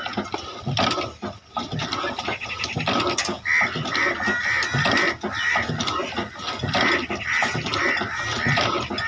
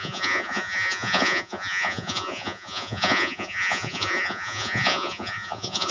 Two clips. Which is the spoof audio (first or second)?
second